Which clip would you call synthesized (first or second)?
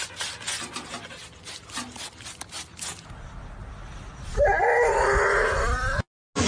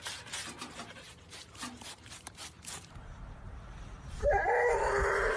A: second